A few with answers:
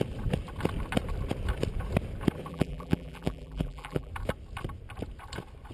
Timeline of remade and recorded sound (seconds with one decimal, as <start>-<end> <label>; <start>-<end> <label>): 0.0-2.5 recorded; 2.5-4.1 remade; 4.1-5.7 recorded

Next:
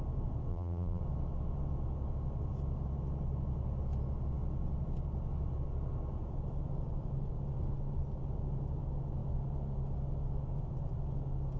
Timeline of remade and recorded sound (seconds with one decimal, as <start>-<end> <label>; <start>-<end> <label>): 0.0-0.5 recorded; 0.5-1.0 remade; 1.0-11.6 recorded

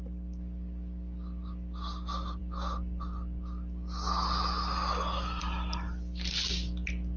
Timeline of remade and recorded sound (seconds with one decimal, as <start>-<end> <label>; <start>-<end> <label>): 0.0-7.2 recorded